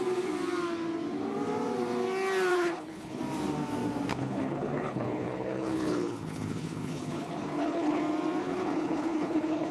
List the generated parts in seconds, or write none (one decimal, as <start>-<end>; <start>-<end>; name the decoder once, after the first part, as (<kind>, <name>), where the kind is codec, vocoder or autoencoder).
2.5-3.2 (codec, HILCodec); 4.1-8.0; 8.4-9.7